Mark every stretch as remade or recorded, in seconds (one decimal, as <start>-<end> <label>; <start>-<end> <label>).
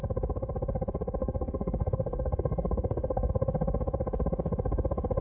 0.0-1.2 recorded; 1.2-3.3 remade; 3.3-5.2 recorded